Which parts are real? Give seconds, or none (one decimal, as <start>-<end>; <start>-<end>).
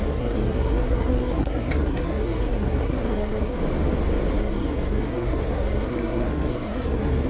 3.6-4.4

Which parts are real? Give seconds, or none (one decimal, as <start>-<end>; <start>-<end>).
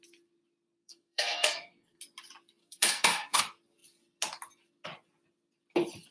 0.0-0.8; 2.0-2.6; 3.4-6.1